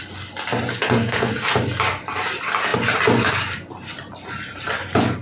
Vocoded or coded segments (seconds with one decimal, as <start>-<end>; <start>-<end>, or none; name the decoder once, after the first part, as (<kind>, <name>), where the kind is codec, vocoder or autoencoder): 0.7-1.3 (codec, SNAC)